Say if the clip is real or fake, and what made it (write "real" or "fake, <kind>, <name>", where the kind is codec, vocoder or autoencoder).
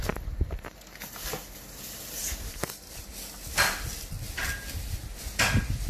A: real